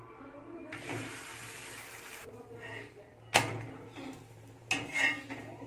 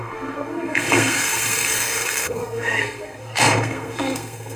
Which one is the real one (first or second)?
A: first